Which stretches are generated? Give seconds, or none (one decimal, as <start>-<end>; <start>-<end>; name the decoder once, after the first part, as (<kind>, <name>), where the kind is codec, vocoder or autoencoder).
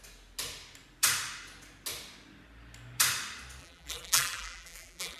3.6-5.2 (vocoder, BigVGAN v2)